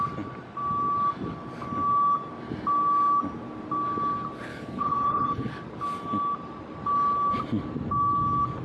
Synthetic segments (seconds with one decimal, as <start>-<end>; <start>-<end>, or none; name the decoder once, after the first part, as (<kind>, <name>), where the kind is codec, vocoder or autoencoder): 4.5-5.5 (codec, HILCodec)